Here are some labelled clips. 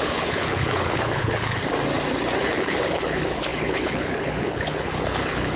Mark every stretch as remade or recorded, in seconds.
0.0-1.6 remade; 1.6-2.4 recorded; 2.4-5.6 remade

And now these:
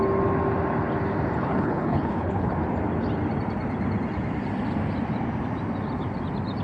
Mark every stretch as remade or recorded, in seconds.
0.0-1.4 recorded; 1.4-2.5 remade; 2.5-6.6 recorded

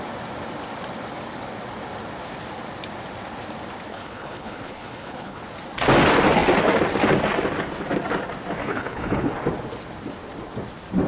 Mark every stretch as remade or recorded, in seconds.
0.0-3.9 recorded; 3.9-5.4 remade; 5.4-8.6 recorded; 8.6-9.3 remade; 9.3-11.1 recorded